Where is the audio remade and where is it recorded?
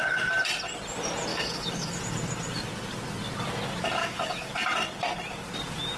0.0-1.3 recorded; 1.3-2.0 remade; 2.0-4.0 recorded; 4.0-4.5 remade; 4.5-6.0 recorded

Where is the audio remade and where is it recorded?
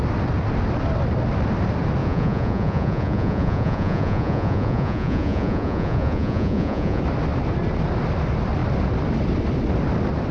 0.0-2.0 recorded; 2.0-7.0 remade; 7.0-10.3 recorded